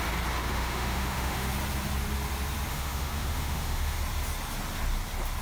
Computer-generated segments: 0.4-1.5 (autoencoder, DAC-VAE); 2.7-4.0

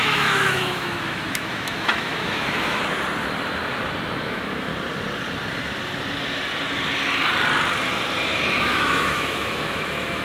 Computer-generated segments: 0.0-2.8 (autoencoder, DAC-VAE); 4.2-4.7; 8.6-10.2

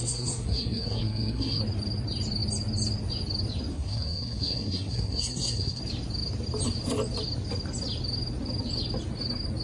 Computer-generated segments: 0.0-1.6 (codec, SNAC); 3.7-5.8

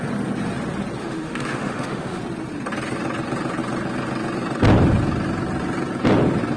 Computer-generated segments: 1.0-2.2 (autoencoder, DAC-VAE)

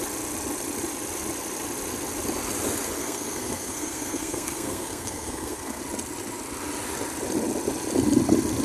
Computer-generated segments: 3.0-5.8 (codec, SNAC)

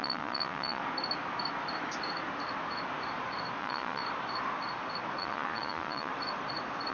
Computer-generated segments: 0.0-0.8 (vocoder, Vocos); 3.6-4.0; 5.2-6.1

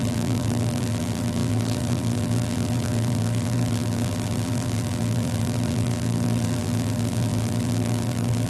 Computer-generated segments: 0.0-8.5 (vocoder, BigVGAN v2)

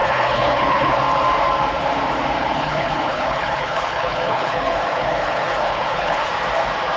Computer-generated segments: 0.0-1.0 (codec, HILCodec); 2.4-6.3